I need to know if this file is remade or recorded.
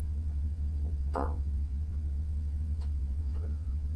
remade